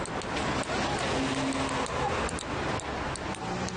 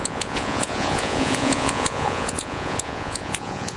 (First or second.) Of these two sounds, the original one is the first